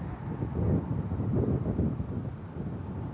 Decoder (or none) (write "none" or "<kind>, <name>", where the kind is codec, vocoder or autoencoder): none